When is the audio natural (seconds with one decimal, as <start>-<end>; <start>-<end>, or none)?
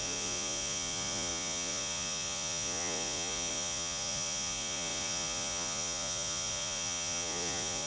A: none